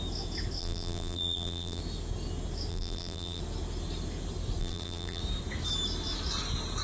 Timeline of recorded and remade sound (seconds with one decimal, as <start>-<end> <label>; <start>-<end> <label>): 0.0-0.6 recorded; 0.6-1.8 remade; 1.8-2.7 recorded; 2.7-3.4 remade; 3.4-4.6 recorded; 4.6-5.2 remade; 5.2-6.8 recorded